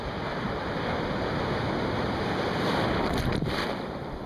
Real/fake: real